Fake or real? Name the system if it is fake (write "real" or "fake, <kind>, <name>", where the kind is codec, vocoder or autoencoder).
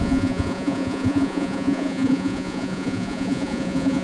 fake, vocoder, Vocos